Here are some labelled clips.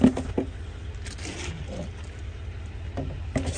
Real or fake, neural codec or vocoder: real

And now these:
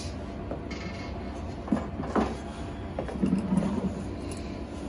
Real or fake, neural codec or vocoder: real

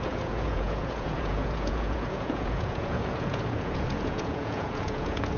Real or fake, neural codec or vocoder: fake, vocoder, Vocos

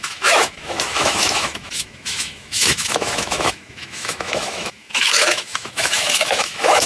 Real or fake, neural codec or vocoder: fake, autoencoder, DAC-VAE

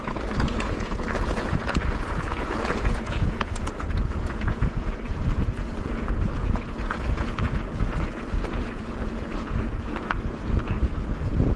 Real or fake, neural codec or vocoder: fake, vocoder, Vocos